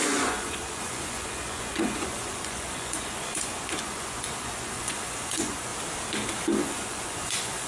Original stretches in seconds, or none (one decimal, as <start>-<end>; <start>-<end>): 5.7-6.6